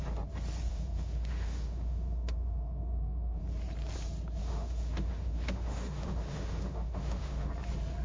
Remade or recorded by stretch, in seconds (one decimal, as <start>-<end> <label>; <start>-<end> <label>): 0.0-0.7 recorded; 0.7-3.4 remade; 3.4-4.4 recorded; 4.4-7.5 remade; 7.5-8.0 recorded